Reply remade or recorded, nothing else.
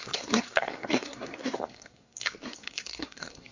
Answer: remade